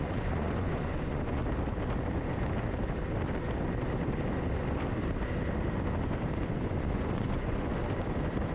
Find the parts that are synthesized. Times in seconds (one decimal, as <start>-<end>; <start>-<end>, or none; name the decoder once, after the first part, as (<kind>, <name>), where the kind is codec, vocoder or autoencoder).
0.0-1.4 (vocoder, Vocos); 6.5-7.7